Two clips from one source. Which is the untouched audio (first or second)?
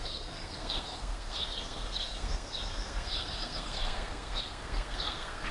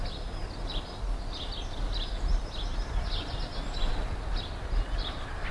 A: second